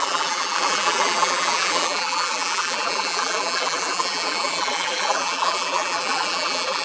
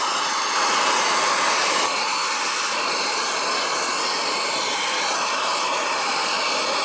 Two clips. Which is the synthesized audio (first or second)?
first